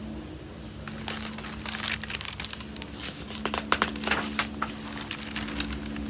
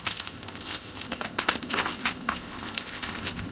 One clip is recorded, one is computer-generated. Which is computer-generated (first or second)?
second